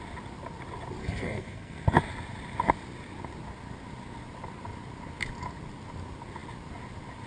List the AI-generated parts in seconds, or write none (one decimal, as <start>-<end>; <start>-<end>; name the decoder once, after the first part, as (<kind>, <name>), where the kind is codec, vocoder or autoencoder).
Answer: 1.0-2.0 (codec, SNAC)